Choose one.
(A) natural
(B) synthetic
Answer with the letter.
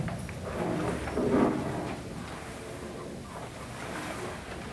A